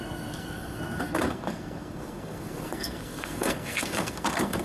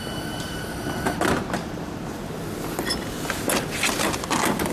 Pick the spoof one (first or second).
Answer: first